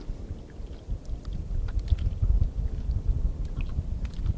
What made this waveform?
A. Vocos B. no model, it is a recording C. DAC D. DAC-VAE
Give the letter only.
B